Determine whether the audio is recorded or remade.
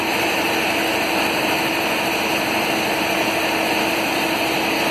recorded